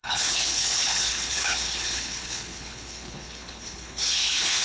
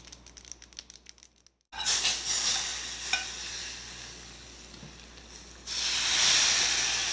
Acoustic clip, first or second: second